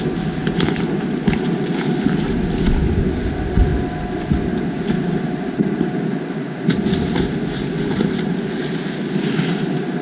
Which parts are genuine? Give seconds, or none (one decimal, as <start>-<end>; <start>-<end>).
0.0-10.0

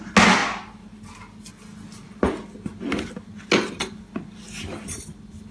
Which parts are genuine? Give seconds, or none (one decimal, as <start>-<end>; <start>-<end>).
0.0-5.5